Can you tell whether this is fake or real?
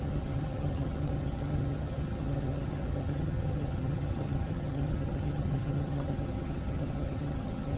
fake